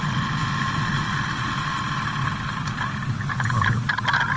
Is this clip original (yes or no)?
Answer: yes